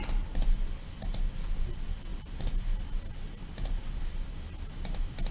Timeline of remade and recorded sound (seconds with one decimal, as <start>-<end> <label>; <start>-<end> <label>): 0.0-5.3 recorded